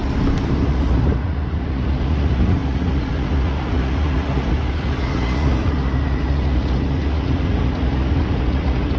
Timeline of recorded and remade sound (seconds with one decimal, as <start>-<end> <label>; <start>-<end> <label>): 0.0-0.6 recorded; 0.6-9.0 remade